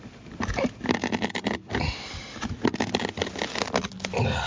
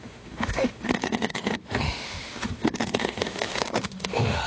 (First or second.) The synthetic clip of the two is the second